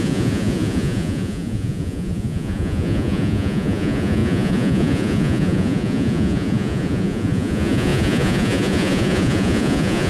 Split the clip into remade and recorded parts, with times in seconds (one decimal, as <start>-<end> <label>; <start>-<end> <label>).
0.0-10.1 remade